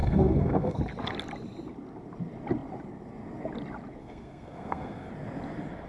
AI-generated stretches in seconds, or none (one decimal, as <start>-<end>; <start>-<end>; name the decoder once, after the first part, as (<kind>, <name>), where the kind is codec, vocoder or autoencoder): 0.0-0.8 (codec, SNAC); 4.0-5.1